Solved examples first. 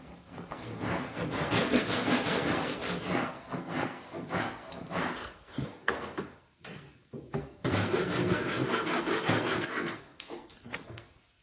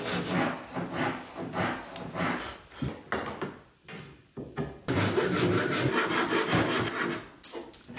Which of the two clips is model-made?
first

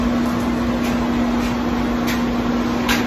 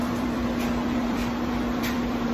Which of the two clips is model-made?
second